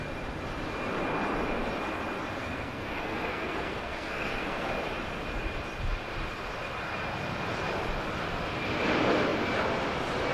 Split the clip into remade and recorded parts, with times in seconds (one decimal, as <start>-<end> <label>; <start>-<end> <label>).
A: 0.0-2.4 recorded; 2.4-4.7 remade; 4.7-10.3 recorded